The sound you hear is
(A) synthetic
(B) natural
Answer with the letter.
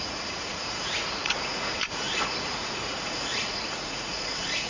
A